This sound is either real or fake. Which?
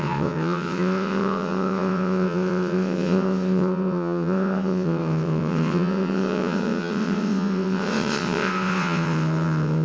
fake